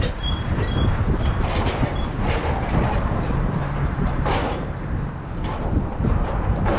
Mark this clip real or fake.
fake